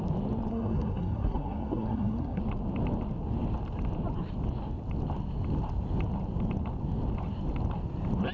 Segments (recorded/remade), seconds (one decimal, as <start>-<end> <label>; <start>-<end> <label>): 0.0-0.5 recorded; 0.5-2.4 remade; 2.4-8.3 recorded